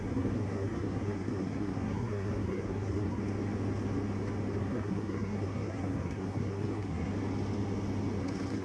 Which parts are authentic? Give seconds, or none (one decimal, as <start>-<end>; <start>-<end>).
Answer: 3.2-4.6; 7.1-8.2